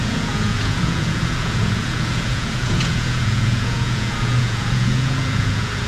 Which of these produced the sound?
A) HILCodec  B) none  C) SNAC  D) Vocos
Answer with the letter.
D